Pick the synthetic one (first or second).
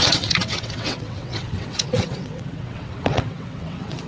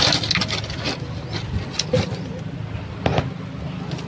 first